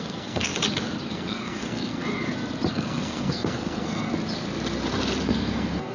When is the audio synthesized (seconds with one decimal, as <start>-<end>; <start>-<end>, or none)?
0.0-0.5; 1.1-2.0; 2.7-4.1; 5.2-5.9